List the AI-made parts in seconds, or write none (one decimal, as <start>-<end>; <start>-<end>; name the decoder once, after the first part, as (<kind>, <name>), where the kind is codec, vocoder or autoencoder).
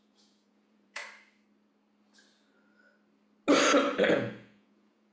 0.0-1.0 (vocoder, Vocos); 4.1-5.1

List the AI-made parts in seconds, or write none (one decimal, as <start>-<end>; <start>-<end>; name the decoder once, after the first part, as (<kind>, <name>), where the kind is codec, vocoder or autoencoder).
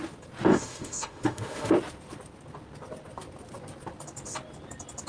0.5-1.7 (autoencoder, DAC-VAE)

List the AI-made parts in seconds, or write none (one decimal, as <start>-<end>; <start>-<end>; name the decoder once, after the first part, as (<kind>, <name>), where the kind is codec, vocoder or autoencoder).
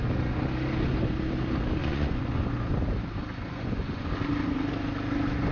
1.8-2.4 (vocoder, Vocos); 3.3-4.0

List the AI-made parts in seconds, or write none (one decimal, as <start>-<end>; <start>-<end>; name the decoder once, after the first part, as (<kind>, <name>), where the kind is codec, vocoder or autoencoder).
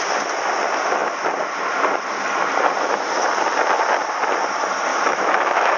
4.9-5.8 (autoencoder, DAC-VAE)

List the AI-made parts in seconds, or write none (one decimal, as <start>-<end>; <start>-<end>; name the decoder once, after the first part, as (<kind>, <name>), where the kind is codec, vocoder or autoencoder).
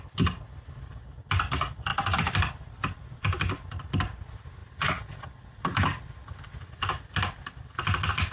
1.9-3.5 (vocoder, BigVGAN v2)